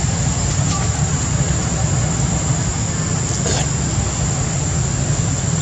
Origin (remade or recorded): recorded